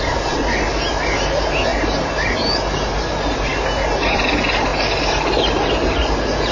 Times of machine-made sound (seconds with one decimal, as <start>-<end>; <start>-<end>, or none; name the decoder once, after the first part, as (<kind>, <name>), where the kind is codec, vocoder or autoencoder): none